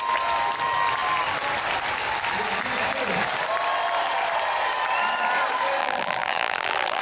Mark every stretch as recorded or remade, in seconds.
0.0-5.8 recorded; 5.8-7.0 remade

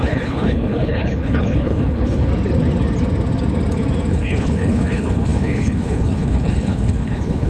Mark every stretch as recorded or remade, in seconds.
0.0-2.3 remade; 2.3-4.1 recorded; 4.1-7.5 remade

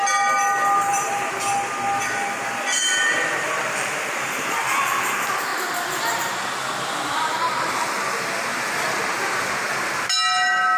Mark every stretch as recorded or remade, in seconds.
0.0-0.9 recorded; 0.9-1.5 remade; 1.5-3.0 recorded; 3.0-4.6 remade; 4.6-8.5 recorded; 8.5-9.5 remade; 9.5-10.8 recorded

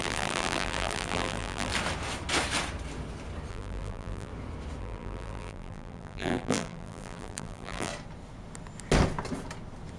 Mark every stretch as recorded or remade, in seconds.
0.0-1.7 remade; 1.7-3.5 recorded; 3.5-4.3 remade; 4.3-4.8 recorded; 4.8-7.9 remade; 7.9-10.0 recorded

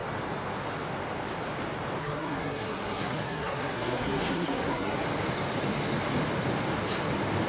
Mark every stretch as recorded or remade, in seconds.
0.0-2.0 recorded; 2.0-5.0 remade; 5.0-7.5 recorded

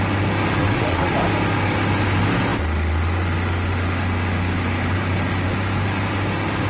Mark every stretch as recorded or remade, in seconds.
0.0-0.6 recorded; 0.6-1.1 remade; 1.1-6.7 recorded